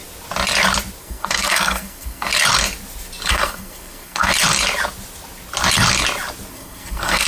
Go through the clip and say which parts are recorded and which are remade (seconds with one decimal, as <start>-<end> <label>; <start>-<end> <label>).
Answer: 0.0-1.0 recorded; 1.0-2.3 remade; 2.3-3.3 recorded; 3.3-4.3 remade; 4.3-6.5 recorded; 6.5-7.3 remade